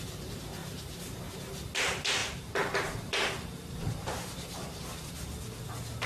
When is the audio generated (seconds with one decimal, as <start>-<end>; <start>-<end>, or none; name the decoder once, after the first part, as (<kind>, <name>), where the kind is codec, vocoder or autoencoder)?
2.2-5.1 (vocoder, BigVGAN v2)